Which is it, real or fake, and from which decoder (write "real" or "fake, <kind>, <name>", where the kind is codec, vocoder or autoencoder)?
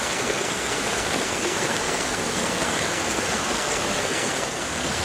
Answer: fake, codec, SNAC